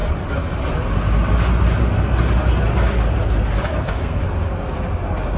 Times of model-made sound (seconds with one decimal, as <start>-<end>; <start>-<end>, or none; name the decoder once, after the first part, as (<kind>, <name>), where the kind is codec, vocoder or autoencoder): 3.7-4.2 (codec, SNAC)